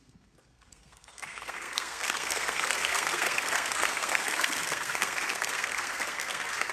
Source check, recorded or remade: remade